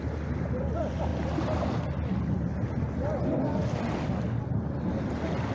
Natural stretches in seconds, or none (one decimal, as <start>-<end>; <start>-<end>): 0.0-5.5